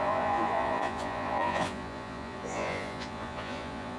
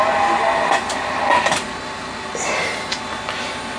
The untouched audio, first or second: second